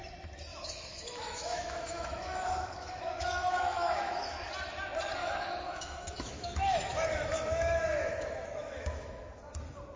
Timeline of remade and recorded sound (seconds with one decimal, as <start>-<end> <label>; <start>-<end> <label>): 0.0-0.5 recorded; 0.5-4.5 remade; 4.5-5.2 recorded; 5.2-9.4 remade; 9.4-10.0 recorded